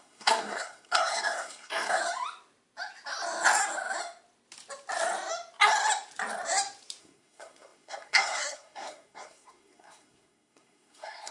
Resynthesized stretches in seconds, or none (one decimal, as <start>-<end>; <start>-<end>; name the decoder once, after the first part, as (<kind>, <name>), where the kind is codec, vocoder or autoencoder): 0.0-2.0 (codec, SNAC); 7.0-11.3